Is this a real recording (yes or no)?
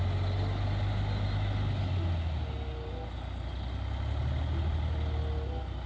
yes